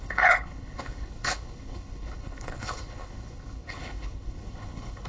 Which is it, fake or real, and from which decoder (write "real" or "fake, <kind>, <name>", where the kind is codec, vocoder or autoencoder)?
fake, codec, HILCodec